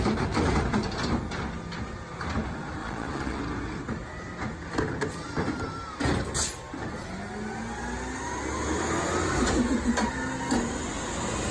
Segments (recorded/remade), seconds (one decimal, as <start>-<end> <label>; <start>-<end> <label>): 0.0-2.8 recorded; 2.8-3.4 remade; 3.4-11.5 recorded